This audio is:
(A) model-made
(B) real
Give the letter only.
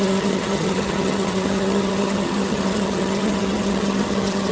A